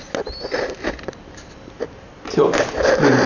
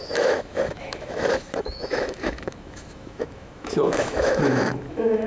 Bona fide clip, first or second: first